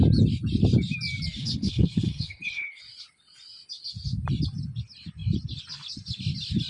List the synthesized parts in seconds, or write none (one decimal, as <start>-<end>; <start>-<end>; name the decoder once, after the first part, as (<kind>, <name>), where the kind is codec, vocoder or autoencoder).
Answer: 1.4-2.8 (codec, HILCodec)